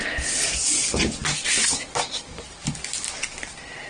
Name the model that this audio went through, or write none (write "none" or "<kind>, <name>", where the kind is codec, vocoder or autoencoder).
none